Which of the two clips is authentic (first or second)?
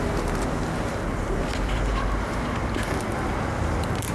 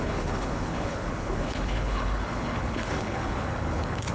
first